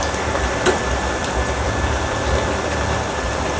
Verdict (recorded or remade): recorded